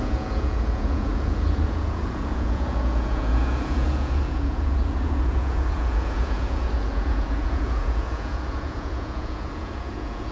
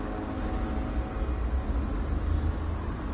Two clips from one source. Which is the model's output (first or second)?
first